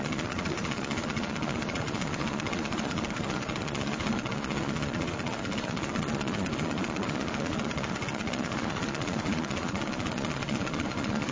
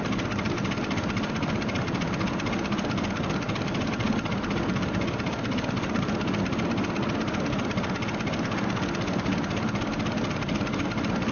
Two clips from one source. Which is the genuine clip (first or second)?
second